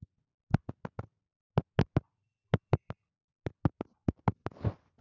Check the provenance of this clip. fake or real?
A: real